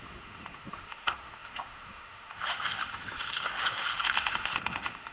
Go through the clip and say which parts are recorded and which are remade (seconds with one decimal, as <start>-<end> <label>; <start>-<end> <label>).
0.0-5.1 remade

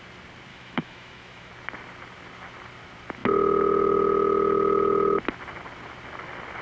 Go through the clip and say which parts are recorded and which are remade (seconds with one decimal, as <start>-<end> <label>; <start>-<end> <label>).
0.0-0.5 recorded; 0.5-1.5 remade; 1.5-6.6 recorded

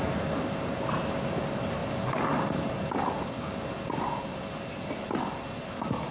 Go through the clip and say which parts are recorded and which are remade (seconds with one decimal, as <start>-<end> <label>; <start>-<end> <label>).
0.0-6.1 recorded

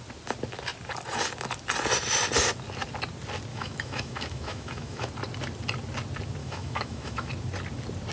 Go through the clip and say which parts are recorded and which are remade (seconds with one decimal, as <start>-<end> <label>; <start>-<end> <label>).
0.0-3.5 recorded; 3.5-5.1 remade; 5.1-6.4 recorded; 6.4-7.3 remade; 7.3-8.1 recorded

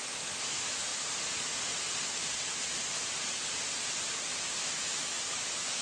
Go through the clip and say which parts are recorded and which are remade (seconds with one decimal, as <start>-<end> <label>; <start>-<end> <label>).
0.0-0.9 remade; 0.9-4.4 recorded; 4.4-5.8 remade

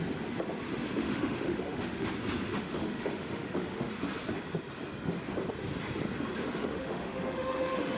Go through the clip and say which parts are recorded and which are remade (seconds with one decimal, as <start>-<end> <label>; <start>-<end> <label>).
0.0-1.0 recorded; 1.0-2.1 remade; 2.1-2.5 recorded; 2.5-3.9 remade; 3.9-6.5 recorded; 6.5-8.0 remade

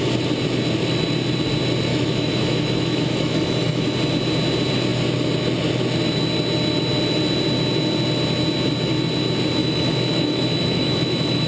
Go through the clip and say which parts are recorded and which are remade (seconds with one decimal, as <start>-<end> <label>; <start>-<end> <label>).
0.0-1.9 recorded; 1.9-3.8 remade; 3.8-9.6 recorded; 9.6-11.5 remade

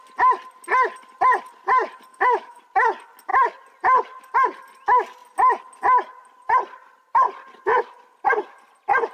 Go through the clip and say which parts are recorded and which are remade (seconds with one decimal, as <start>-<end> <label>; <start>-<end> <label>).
0.0-2.1 recorded; 2.1-2.6 remade; 2.6-9.1 recorded